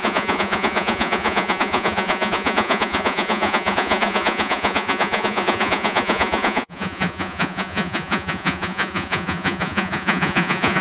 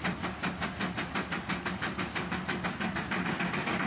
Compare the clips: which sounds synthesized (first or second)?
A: first